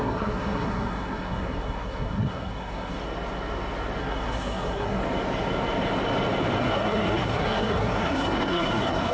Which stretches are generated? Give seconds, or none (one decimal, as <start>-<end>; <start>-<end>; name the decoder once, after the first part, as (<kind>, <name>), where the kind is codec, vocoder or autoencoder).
0.0-3.0 (codec, SNAC); 4.0-5.0; 6.6-9.1